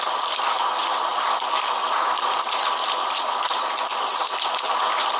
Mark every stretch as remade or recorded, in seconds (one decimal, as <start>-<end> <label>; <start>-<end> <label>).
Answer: 0.0-1.1 recorded; 1.1-4.2 remade; 4.2-5.2 recorded